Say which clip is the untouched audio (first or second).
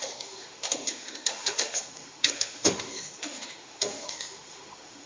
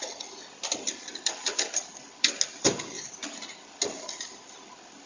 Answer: second